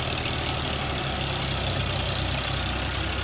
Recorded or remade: recorded